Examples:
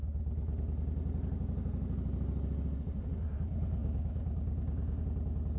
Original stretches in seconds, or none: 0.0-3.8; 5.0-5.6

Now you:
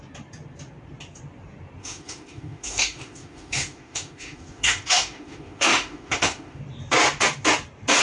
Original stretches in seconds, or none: 0.0-1.8; 6.6-8.0

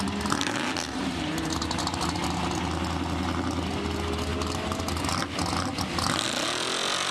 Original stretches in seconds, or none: 0.0-7.1

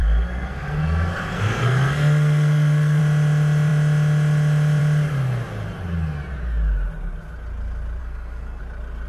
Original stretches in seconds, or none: 3.0-8.0; 8.6-9.1

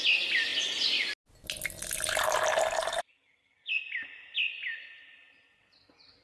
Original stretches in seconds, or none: 0.0-6.2

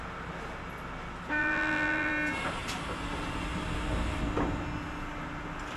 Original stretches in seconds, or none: 0.0-1.4; 2.1-5.8

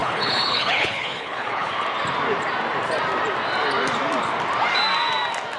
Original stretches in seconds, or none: 1.7-5.6